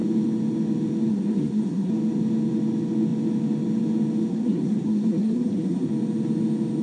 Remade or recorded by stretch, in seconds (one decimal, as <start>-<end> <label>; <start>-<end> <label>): 0.0-1.1 recorded; 1.1-1.9 remade; 1.9-4.3 recorded; 4.3-5.9 remade; 5.9-6.8 recorded